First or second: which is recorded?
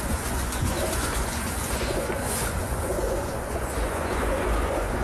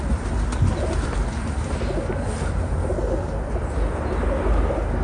second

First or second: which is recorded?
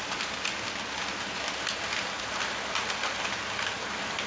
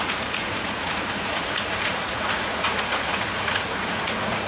first